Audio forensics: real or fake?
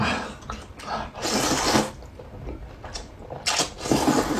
real